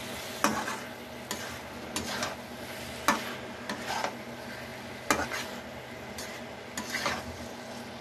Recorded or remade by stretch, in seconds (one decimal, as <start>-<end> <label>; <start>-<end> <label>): 0.0-8.0 recorded

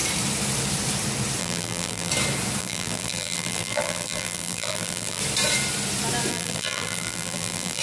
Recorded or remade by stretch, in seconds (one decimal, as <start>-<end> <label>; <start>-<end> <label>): 0.0-1.4 recorded; 1.4-2.1 remade; 2.1-2.6 recorded; 2.6-5.2 remade; 5.2-6.3 recorded; 6.3-7.8 remade

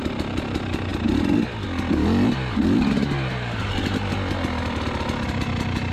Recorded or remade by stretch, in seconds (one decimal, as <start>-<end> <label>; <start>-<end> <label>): 0.0-5.9 recorded

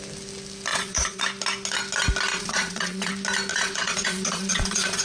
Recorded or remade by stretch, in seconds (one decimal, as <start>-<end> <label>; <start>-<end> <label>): 0.0-0.7 recorded; 0.7-1.2 remade; 1.2-2.3 recorded; 2.3-3.1 remade; 3.1-3.5 recorded; 3.5-5.0 remade

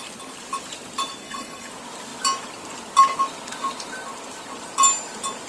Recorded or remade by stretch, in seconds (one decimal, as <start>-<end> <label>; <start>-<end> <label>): 0.0-1.2 recorded; 1.2-1.7 remade; 1.7-5.5 recorded

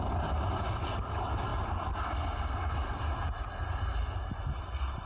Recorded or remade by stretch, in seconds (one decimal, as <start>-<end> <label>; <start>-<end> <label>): 0.0-1.5 remade; 1.5-4.6 recorded; 4.6-5.1 remade

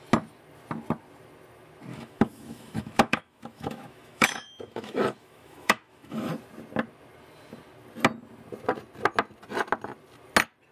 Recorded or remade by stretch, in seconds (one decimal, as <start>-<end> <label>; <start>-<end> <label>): 0.0-1.9 recorded; 1.9-6.3 remade; 6.3-10.7 recorded

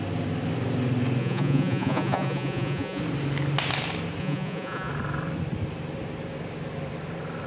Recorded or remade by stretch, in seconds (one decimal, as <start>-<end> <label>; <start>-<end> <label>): 0.0-1.2 recorded; 1.2-3.0 remade; 3.0-4.2 recorded; 4.2-4.9 remade; 4.9-7.5 recorded